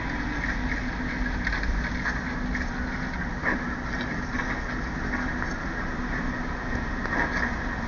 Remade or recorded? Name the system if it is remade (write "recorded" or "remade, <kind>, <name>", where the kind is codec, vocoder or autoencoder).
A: recorded